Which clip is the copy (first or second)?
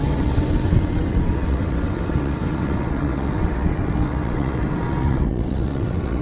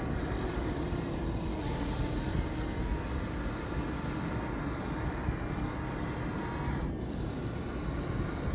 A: first